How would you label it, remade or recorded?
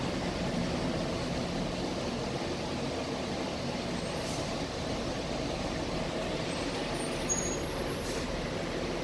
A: recorded